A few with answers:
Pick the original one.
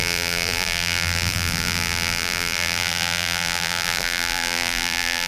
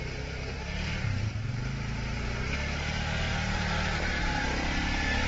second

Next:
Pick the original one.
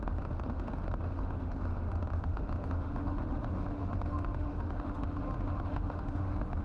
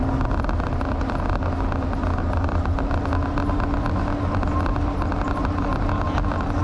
second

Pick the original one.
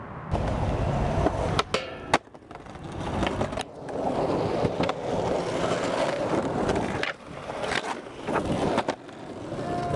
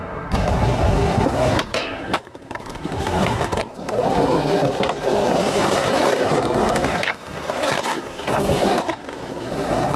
first